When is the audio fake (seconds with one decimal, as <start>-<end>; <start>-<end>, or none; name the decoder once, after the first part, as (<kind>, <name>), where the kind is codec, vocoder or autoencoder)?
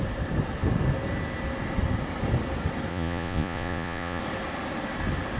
2.9-4.2 (vocoder, Vocos)